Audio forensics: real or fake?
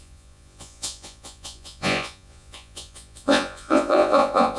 fake